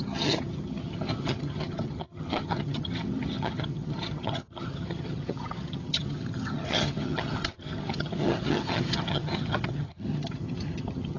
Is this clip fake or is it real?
fake